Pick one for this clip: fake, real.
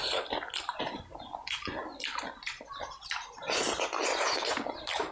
real